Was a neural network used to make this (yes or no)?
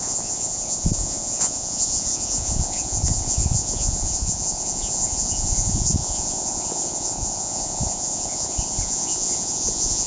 yes